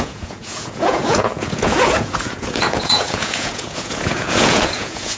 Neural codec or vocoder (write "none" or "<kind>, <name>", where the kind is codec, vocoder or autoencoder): vocoder, Vocos